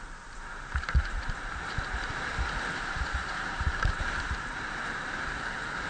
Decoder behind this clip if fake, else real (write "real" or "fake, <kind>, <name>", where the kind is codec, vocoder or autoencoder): fake, vocoder, BigVGAN v2